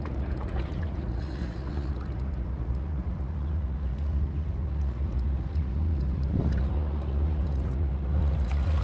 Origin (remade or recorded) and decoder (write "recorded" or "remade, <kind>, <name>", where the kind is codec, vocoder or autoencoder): remade, vocoder, Vocos